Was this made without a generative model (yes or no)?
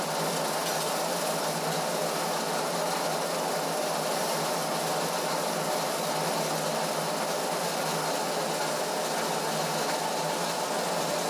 yes